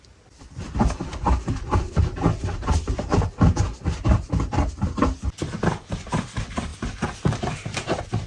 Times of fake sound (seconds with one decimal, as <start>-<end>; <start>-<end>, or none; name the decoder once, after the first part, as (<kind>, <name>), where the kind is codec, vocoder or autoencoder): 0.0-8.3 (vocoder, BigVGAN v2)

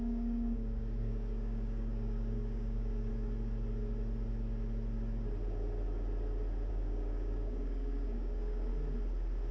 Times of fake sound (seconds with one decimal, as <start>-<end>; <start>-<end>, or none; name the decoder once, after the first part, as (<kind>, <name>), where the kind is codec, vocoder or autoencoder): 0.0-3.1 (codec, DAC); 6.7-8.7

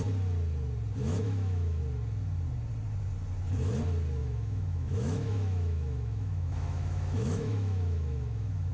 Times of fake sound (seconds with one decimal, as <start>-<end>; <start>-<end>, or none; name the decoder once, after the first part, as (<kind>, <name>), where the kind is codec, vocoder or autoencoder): 1.0-1.8 (autoencoder, DAC-VAE); 4.2-8.7